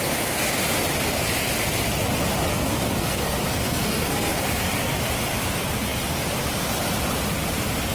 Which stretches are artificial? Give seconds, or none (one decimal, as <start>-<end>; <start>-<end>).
2.5-5.0

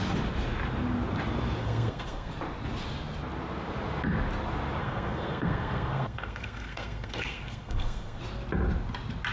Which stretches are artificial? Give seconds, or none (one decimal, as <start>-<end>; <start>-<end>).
1.6-2.3; 4.8-8.2

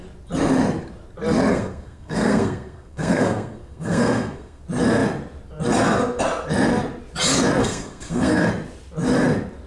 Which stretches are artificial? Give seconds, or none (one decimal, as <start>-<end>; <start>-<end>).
1.5-4.6; 7.6-8.5

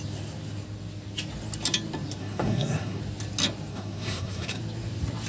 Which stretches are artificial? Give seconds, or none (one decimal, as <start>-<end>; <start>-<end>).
2.2-3.0; 3.7-4.6

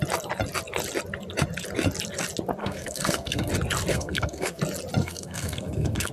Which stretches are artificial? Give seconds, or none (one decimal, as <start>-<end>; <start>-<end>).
2.6-3.5; 3.9-4.6; 5.0-6.1